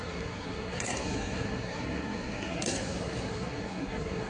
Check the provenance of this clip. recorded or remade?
remade